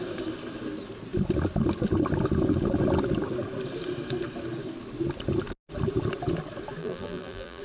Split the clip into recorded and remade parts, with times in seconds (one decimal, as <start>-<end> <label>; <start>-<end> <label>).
0.0-6.8 recorded; 6.8-7.6 remade